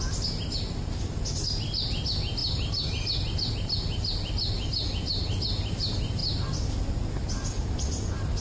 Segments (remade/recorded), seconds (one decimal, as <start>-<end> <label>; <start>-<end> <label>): 0.0-8.4 recorded